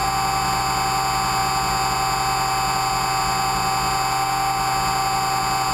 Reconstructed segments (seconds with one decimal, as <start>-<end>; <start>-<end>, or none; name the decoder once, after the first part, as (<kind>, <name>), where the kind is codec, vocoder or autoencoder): none